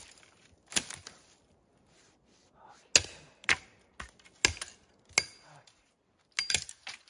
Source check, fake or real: real